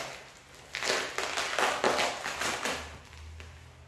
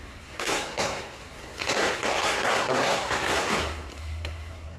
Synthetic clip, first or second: second